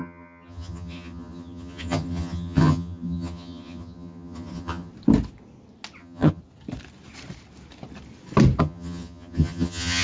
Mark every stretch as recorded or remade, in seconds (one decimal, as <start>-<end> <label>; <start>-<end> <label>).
0.0-4.9 remade; 4.9-6.0 recorded; 6.0-6.4 remade; 6.4-8.6 recorded; 8.6-10.0 remade